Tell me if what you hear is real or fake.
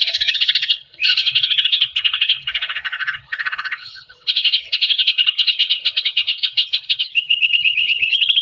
fake